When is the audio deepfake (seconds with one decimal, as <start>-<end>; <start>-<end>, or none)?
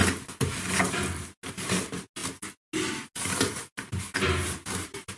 none